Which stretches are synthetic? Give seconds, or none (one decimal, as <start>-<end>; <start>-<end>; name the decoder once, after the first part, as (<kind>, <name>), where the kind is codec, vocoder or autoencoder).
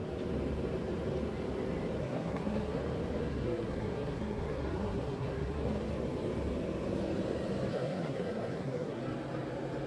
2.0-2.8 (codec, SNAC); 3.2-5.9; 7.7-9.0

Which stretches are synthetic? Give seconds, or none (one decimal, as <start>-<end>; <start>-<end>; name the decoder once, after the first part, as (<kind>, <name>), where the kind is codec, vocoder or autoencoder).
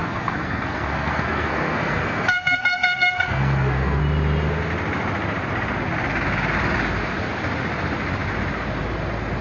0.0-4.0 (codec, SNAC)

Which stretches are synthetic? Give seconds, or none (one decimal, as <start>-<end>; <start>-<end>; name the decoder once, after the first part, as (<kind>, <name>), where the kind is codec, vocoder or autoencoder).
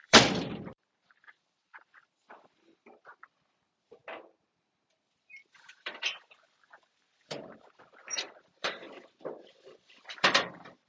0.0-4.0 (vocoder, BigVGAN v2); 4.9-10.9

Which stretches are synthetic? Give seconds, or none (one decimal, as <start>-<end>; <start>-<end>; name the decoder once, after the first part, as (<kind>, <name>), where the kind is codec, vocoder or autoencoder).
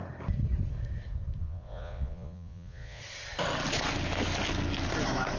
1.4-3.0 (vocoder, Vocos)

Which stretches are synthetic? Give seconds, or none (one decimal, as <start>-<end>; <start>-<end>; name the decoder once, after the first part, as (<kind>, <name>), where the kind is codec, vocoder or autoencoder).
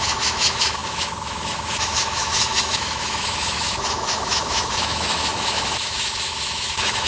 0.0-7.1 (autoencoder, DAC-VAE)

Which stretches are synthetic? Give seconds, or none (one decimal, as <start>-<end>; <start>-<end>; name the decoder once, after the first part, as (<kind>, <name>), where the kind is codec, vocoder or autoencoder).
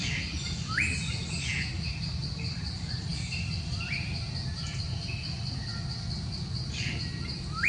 none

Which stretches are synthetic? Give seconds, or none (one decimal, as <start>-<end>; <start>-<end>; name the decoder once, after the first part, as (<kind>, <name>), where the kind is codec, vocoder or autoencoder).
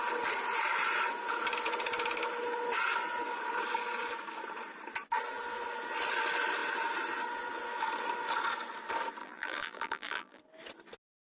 9.2-10.4 (vocoder, BigVGAN v2)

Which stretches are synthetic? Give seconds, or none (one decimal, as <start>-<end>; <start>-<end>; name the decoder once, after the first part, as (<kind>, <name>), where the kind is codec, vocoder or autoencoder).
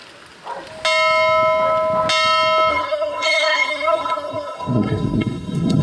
2.7-5.8 (codec, SNAC)